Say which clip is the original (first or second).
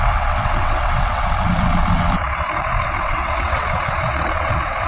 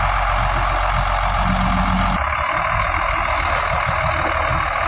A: second